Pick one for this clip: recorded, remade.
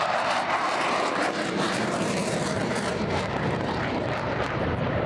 remade